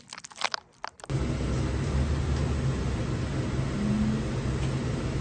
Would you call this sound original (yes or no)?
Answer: yes